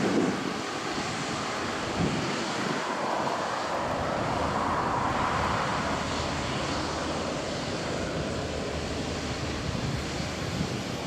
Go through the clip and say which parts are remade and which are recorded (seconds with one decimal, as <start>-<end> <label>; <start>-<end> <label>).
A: 0.0-11.1 recorded